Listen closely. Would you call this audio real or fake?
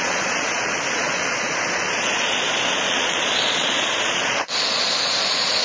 fake